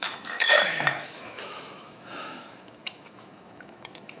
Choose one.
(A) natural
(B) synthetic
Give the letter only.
B